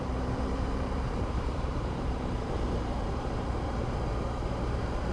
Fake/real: fake